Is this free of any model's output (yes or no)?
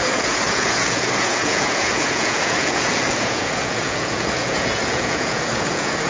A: no